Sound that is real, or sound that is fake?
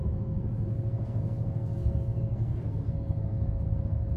fake